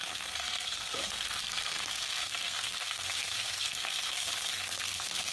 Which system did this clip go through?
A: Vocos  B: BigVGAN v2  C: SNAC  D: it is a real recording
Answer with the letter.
C